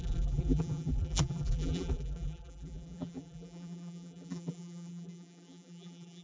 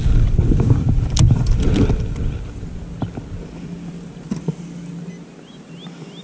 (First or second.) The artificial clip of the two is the first